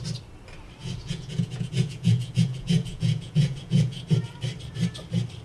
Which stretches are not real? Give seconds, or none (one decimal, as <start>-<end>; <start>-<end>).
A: 0.8-4.0